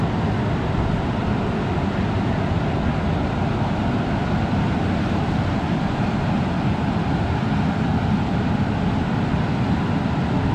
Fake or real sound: real